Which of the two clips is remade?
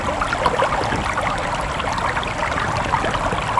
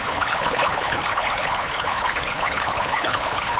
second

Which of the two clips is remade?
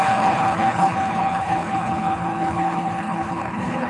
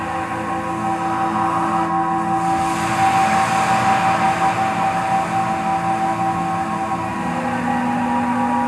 first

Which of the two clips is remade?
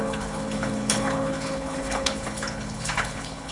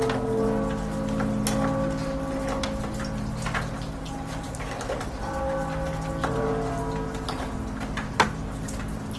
first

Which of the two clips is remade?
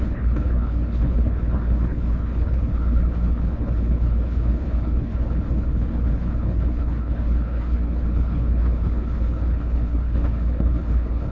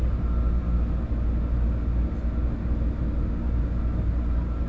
first